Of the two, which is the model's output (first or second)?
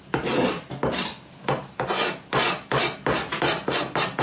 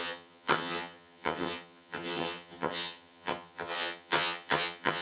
second